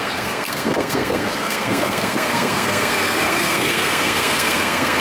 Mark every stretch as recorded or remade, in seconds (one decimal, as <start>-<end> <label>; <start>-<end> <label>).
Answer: 0.0-5.0 remade